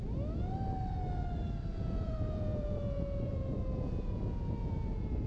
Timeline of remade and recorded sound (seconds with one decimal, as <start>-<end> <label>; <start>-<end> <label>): 0.0-1.7 recorded; 1.7-5.3 remade